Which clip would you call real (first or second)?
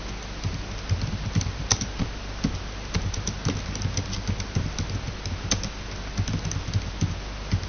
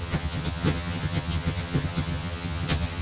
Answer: first